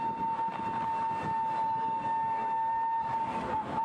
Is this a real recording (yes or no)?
yes